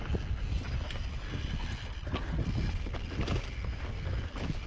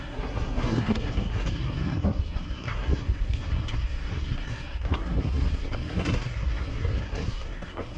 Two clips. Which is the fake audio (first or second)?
second